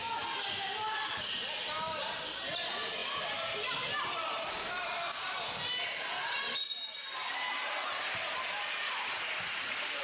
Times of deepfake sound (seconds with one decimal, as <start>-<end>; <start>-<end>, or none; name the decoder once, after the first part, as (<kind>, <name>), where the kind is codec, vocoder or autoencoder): none